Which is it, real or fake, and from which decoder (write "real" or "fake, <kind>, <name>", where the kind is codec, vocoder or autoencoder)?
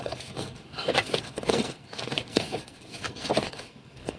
fake, codec, SNAC